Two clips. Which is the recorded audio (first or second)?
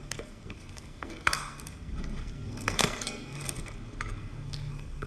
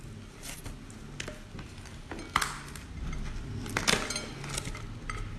second